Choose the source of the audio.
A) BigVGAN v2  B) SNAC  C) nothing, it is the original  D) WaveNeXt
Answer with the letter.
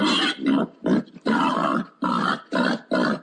C